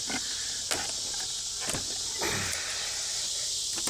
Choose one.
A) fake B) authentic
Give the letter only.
B